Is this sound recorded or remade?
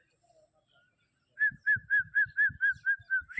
recorded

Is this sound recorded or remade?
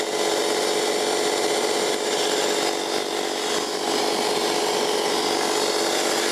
recorded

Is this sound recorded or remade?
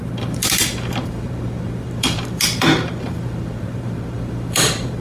remade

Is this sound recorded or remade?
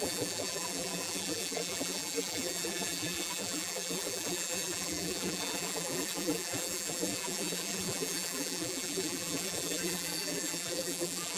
remade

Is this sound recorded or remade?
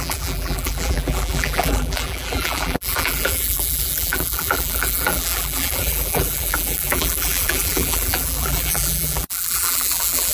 remade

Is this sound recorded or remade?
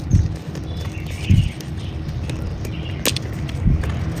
recorded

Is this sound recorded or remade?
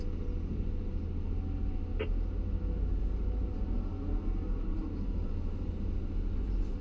recorded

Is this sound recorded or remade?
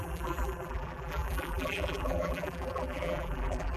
remade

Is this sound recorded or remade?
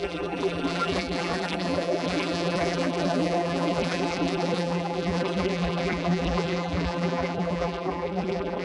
remade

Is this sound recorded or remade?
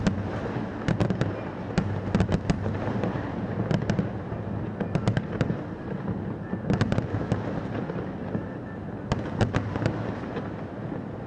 recorded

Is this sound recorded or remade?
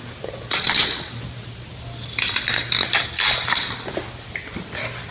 recorded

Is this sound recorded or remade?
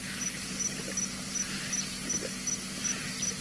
recorded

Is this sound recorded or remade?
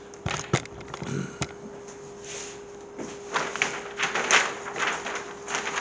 recorded